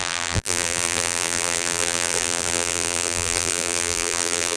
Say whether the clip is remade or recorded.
remade